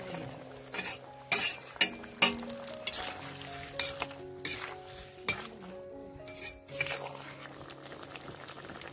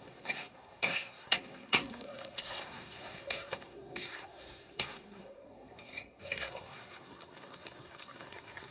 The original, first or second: first